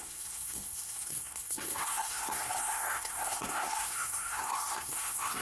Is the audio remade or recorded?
remade